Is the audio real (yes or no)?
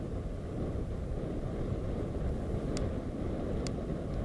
yes